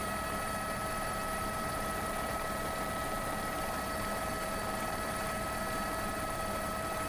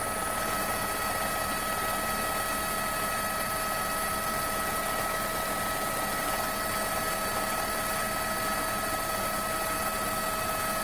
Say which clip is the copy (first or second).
first